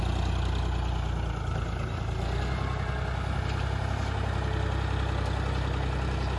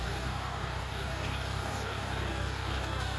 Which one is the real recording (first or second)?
first